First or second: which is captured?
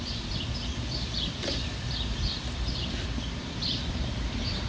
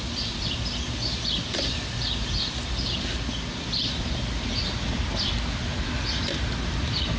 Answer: second